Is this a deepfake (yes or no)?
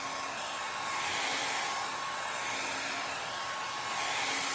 no